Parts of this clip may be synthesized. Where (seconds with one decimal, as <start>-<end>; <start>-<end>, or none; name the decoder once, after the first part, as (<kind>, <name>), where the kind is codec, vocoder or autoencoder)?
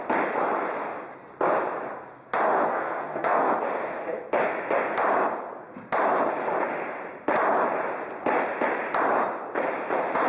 2.7-3.5 (codec, SNAC)